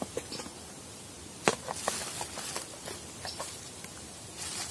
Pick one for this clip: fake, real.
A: real